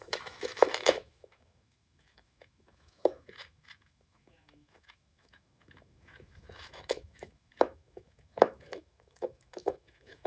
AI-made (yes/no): yes